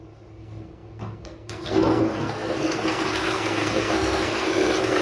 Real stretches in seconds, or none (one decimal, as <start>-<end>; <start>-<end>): none